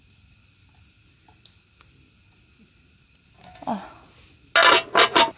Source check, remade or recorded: recorded